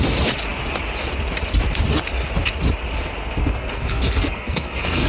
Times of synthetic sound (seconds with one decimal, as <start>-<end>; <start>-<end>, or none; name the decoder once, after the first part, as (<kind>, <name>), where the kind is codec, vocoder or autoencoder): 3.4-5.1 (codec, SNAC)